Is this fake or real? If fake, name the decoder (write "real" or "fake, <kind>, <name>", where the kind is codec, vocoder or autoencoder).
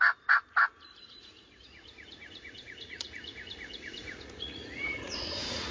fake, vocoder, Vocos